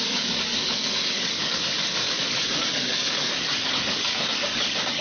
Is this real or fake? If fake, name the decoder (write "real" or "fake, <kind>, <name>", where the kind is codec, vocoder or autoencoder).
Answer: fake, codec, DAC